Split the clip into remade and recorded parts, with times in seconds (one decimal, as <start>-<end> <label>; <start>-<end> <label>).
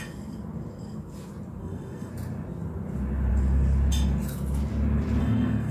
0.0-1.6 recorded; 1.6-2.1 remade; 2.1-5.2 recorded; 5.2-5.7 remade